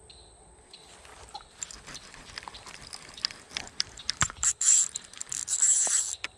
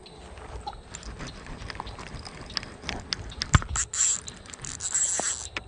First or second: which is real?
second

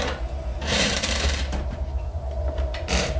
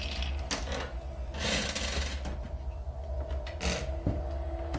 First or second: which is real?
second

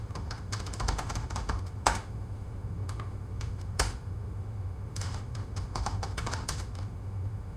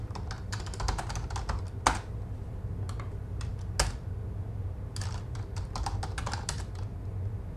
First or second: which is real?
second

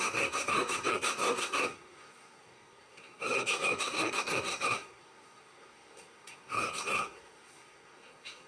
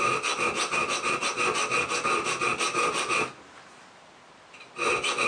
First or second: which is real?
second